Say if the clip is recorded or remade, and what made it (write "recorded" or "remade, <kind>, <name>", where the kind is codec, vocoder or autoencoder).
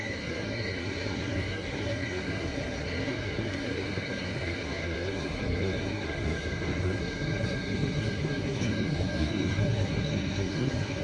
remade, codec, SNAC